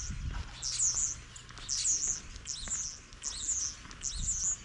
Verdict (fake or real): real